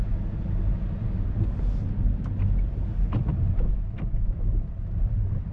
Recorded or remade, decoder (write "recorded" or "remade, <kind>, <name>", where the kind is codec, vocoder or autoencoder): recorded